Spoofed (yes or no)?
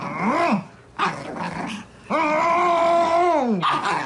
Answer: no